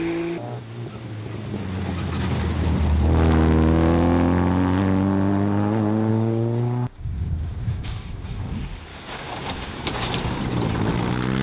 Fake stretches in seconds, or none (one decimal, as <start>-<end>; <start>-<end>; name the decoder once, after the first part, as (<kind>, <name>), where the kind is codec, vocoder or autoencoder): 6.1-8.4 (codec, DAC); 8.9-10.4

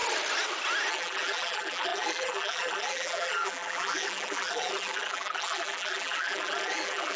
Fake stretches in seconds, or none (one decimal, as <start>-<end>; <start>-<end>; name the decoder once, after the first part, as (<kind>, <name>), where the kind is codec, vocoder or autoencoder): 0.9-7.2 (vocoder, BigVGAN v2)